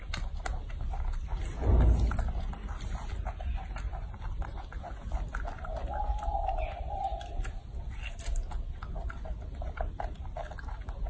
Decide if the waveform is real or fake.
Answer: real